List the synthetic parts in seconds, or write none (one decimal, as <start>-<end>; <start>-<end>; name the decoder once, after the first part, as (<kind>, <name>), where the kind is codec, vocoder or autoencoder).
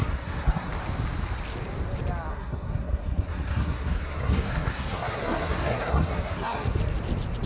0.0-0.7 (codec, SNAC); 2.3-6.8